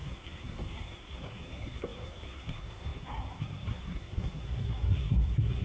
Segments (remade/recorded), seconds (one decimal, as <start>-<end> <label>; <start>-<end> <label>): 0.0-5.6 remade